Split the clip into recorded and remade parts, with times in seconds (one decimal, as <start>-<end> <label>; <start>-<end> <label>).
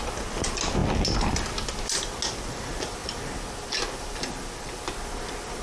0.0-5.6 recorded